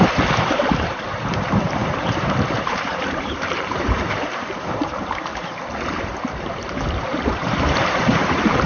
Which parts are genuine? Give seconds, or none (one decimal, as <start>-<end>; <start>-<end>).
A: 5.3-6.0